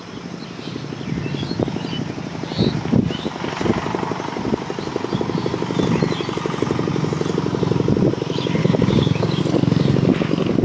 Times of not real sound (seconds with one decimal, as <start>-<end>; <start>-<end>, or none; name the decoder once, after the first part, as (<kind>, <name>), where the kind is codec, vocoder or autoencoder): 8.6-9.4 (codec, DAC)